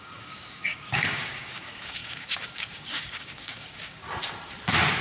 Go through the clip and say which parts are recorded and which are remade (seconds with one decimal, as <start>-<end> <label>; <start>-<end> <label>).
0.0-4.0 remade; 4.0-5.0 recorded